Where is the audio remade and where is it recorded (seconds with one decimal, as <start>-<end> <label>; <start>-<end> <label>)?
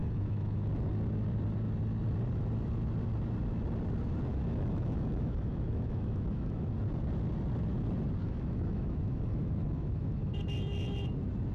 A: 0.0-0.7 remade; 0.7-4.3 recorded; 4.3-6.7 remade; 6.7-8.2 recorded; 8.2-10.3 remade; 10.3-11.5 recorded